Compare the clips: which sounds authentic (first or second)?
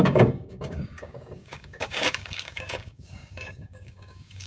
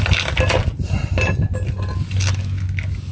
second